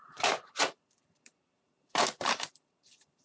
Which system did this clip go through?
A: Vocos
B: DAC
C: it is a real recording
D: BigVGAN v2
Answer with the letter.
D